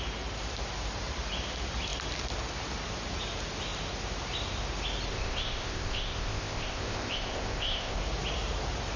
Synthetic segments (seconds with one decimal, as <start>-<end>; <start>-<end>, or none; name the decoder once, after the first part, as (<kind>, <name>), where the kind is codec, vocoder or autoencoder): 5.1-8.0 (codec, ZipCodec)

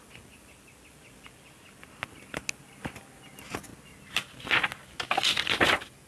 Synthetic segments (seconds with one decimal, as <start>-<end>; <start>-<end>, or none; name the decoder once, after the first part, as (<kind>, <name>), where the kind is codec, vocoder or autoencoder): none